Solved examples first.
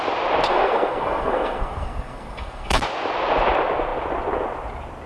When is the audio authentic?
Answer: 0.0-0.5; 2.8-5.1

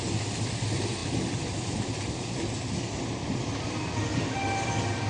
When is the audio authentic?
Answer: 0.0-5.1